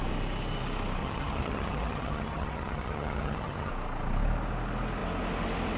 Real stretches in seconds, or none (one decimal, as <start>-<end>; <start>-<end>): 0.0-1.0; 3.7-5.8